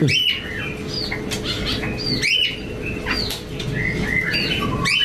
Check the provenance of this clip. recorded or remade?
recorded